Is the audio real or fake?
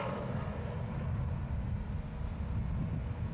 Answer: real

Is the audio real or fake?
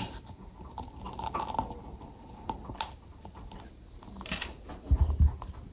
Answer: real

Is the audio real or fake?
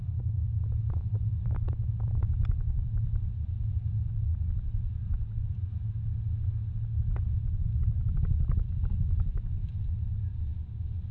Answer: real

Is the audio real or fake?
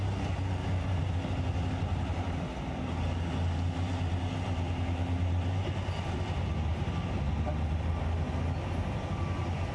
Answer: real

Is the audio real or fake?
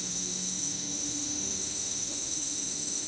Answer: fake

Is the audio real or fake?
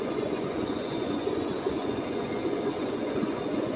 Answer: fake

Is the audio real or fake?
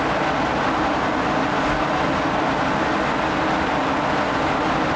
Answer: real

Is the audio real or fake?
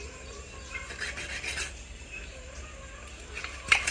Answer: real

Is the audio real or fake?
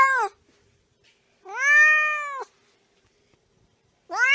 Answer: real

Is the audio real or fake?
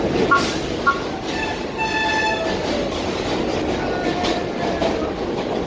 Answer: real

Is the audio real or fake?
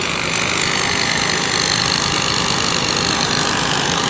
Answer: real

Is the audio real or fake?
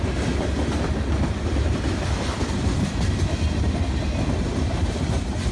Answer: real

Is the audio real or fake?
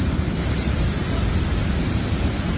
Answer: fake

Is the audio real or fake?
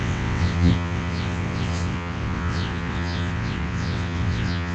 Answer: fake